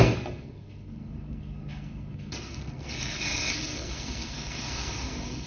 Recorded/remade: remade